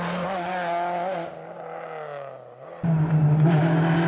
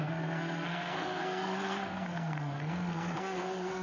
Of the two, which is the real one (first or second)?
first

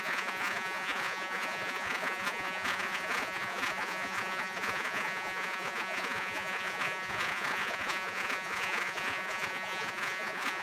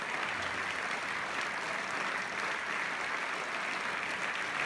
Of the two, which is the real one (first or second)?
second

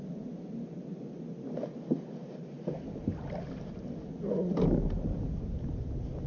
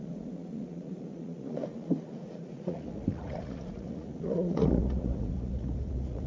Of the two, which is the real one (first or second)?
first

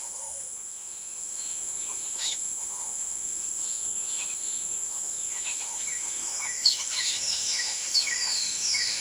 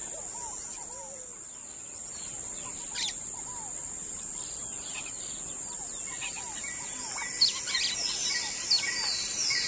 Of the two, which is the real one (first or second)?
second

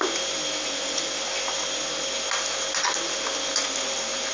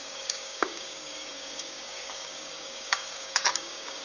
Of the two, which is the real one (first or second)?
first